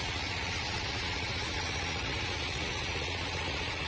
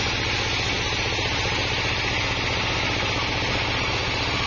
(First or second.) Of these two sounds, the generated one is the first